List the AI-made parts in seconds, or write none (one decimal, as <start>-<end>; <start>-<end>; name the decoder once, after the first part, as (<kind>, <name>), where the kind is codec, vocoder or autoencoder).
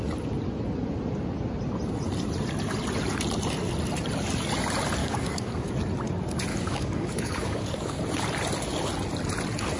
5.0-5.7 (codec, DAC); 6.5-8.0